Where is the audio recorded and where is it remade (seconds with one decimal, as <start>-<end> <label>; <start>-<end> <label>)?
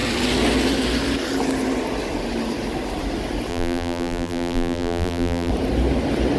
0.0-3.5 recorded; 3.5-5.5 remade; 5.5-6.4 recorded